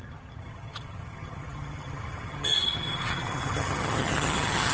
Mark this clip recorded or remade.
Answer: remade